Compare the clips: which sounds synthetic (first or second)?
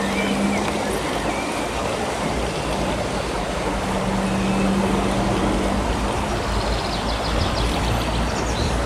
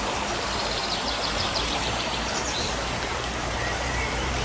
second